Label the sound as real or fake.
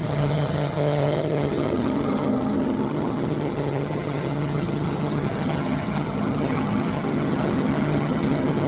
fake